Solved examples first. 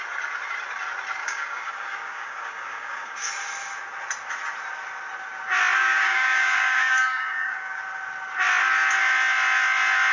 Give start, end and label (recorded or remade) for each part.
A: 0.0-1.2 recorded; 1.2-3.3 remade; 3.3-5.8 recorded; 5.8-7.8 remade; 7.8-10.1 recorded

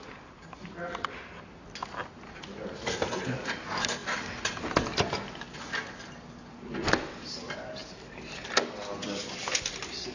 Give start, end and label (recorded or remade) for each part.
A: 0.0-10.1 recorded

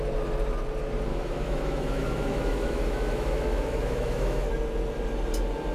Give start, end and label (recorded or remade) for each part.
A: 0.0-1.1 recorded; 1.1-4.5 remade; 4.5-5.7 recorded

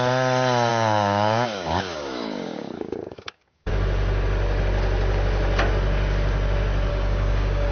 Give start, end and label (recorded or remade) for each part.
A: 0.0-0.7 recorded; 0.7-3.7 remade; 3.7-6.9 recorded; 6.9-7.7 remade

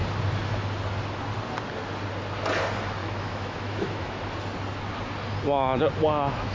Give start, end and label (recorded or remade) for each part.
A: 0.0-3.0 recorded; 3.0-4.2 remade; 4.2-6.5 recorded

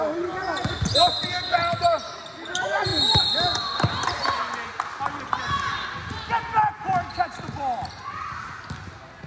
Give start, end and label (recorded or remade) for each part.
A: 0.0-9.3 recorded

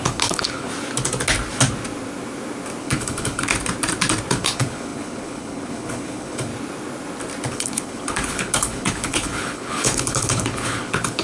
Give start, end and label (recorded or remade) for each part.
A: 0.0-0.7 remade; 0.7-2.8 recorded; 2.8-3.5 remade; 3.5-4.3 recorded; 4.3-6.5 remade; 6.5-7.5 recorded; 7.5-11.2 remade